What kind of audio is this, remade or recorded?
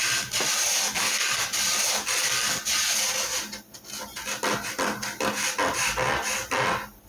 recorded